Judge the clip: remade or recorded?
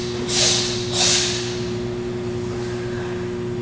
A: recorded